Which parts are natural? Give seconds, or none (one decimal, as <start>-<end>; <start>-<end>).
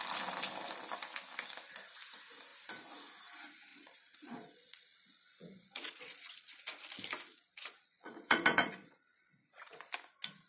0.0-3.7; 6.6-7.3; 9.9-10.5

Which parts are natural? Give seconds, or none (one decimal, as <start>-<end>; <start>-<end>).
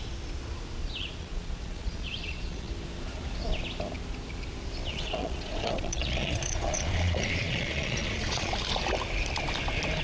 0.0-0.8; 2.7-4.9; 8.5-10.0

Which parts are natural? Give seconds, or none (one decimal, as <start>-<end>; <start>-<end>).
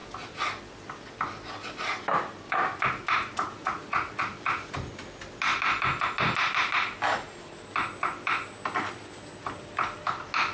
0.0-3.6; 4.2-10.5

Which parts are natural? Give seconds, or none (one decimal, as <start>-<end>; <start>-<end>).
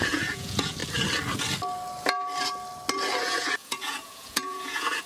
0.8-3.2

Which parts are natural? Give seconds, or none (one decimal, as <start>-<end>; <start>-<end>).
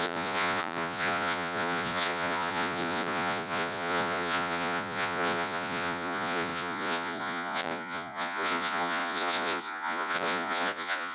none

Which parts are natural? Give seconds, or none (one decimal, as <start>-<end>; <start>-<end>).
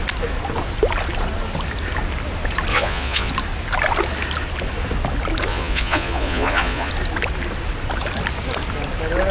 0.0-2.7; 3.3-5.5; 6.9-9.3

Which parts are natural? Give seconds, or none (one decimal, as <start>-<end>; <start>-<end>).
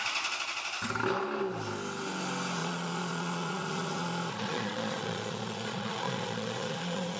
0.0-2.6